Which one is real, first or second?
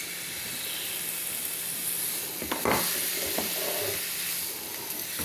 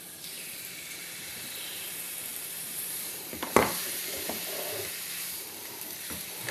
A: first